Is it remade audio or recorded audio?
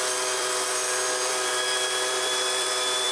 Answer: remade